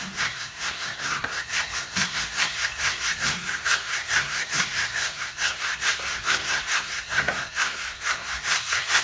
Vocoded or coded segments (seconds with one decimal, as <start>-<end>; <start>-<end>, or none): 0.0-9.0